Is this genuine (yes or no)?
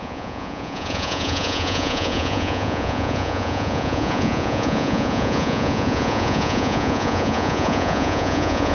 no